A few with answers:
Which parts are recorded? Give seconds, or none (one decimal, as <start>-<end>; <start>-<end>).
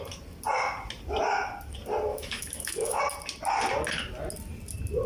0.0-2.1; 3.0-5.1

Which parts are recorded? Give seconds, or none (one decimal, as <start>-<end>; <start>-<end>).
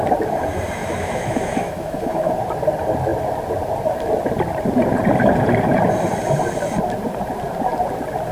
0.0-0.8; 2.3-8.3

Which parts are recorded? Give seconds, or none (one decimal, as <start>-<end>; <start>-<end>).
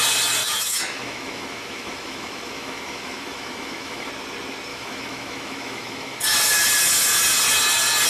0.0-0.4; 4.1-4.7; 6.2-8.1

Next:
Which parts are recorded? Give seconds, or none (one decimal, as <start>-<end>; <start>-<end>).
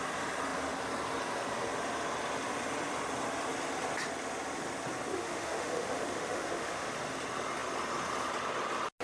0.0-5.1; 6.9-9.0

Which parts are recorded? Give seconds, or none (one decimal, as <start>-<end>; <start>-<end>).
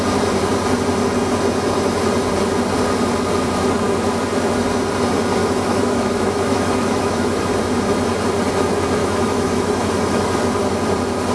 0.0-5.4; 7.4-9.0; 10.4-11.3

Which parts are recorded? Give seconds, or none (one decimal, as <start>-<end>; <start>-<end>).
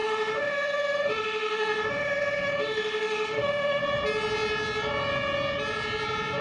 3.8-6.4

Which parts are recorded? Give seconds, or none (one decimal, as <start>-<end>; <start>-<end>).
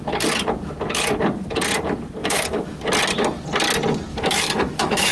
0.0-2.2; 2.8-4.1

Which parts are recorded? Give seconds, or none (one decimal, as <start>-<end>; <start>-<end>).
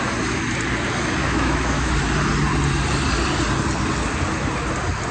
0.0-1.2; 1.9-5.1